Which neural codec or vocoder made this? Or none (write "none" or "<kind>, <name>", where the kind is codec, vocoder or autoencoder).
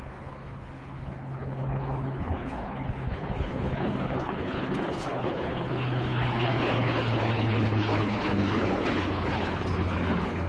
codec, HILCodec